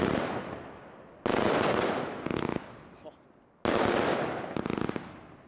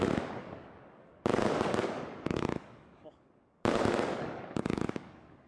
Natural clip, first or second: first